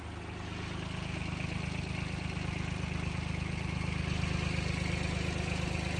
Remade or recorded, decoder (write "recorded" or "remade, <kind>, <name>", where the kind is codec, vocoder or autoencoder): recorded